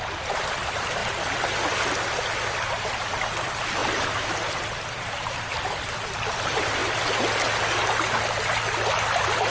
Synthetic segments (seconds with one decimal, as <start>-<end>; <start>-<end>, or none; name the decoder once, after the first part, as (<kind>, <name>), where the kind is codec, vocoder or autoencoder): 0.0-3.8 (vocoder, BigVGAN v2); 5.4-6.8; 8.3-9.5